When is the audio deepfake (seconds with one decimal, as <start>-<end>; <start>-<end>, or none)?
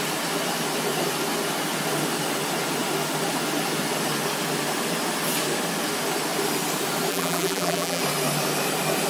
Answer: 7.1-8.0